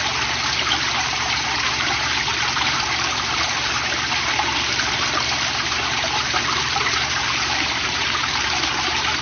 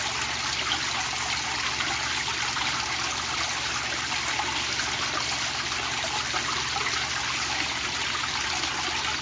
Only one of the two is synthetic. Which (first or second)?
first